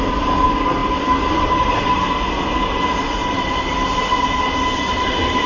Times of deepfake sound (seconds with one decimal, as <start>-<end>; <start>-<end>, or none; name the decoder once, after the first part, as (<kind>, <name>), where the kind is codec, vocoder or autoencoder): none